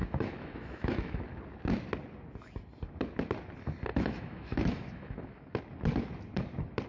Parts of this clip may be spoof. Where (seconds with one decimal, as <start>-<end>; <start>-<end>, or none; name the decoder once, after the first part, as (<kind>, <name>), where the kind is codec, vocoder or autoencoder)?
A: 0.0-1.2 (autoencoder, DAC-VAE); 3.9-5.6